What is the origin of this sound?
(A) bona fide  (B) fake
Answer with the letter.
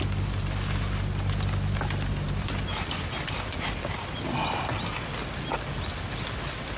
A